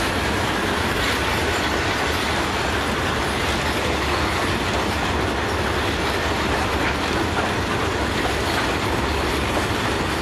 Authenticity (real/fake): real